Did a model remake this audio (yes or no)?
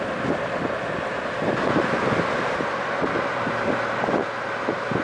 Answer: no